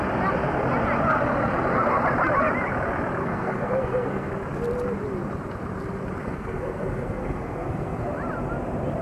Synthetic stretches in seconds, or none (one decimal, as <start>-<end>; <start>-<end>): 3.2-4.3; 6.2-8.1